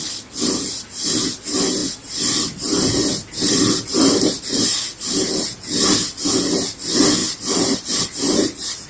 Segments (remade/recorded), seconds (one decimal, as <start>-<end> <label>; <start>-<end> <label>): 0.0-8.9 recorded